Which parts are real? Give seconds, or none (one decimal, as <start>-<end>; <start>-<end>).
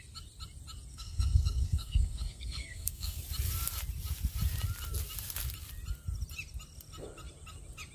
0.0-0.9; 3.2-7.9